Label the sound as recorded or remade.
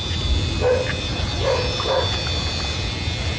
recorded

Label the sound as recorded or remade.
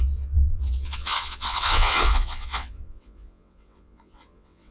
remade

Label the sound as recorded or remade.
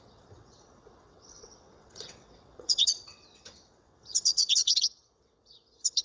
remade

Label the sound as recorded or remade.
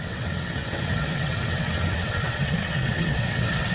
remade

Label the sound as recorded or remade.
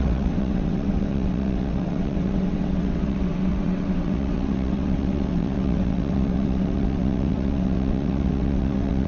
remade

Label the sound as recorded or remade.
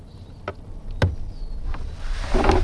recorded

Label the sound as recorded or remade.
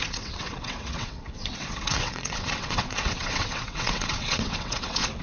remade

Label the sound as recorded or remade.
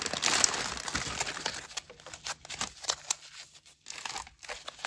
recorded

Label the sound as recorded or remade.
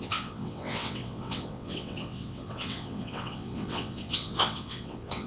remade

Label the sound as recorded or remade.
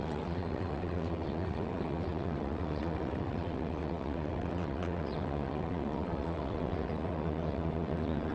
remade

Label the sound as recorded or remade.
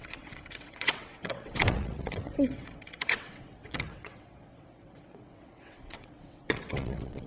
remade